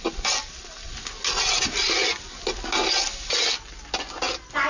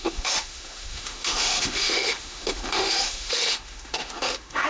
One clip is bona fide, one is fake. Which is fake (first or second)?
second